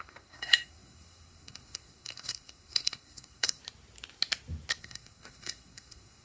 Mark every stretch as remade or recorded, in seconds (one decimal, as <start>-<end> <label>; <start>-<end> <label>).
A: 0.0-3.6 remade; 3.6-4.8 recorded; 4.8-6.2 remade